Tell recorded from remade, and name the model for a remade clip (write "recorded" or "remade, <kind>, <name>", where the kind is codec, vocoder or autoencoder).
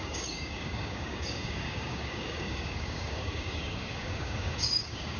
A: remade, codec, DAC